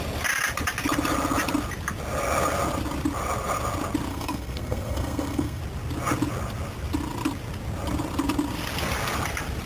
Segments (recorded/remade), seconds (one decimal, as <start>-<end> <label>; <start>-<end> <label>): 0.0-4.1 recorded; 4.1-5.6 remade; 5.6-9.7 recorded